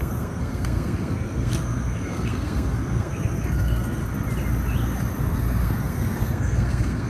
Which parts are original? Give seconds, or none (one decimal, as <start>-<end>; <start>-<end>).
4.0-5.2